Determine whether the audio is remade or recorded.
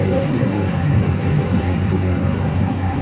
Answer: remade